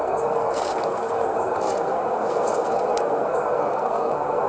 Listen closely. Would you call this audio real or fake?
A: fake